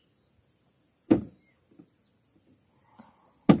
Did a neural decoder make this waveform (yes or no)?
no